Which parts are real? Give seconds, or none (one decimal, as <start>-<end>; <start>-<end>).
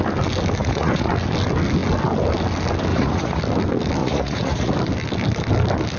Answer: 0.0-0.6; 1.1-2.9; 3.4-4.0; 4.7-6.0